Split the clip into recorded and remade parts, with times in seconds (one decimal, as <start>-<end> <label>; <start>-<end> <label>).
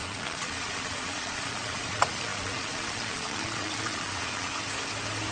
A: 0.0-4.5 remade; 4.5-5.3 recorded